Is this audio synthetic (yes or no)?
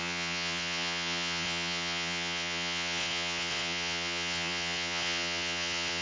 yes